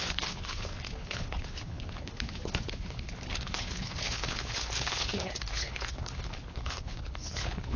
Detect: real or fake fake